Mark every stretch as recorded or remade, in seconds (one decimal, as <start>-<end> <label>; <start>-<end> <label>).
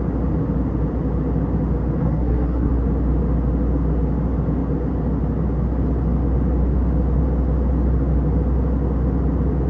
0.0-2.0 recorded; 2.0-2.7 remade; 2.7-9.7 recorded